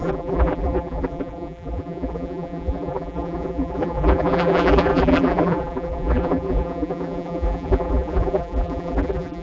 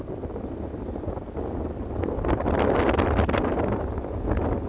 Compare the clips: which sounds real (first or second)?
second